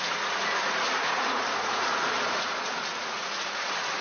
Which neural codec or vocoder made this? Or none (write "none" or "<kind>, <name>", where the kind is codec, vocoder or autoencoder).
vocoder, Vocos